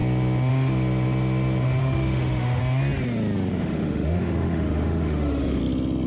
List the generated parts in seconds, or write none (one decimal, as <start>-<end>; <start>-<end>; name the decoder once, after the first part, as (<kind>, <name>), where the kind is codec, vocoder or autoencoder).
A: 1.8-2.6 (autoencoder, DAC-VAE); 3.5-5.6